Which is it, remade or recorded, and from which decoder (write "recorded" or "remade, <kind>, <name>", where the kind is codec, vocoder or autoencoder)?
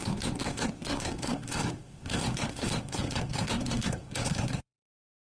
remade, codec, SNAC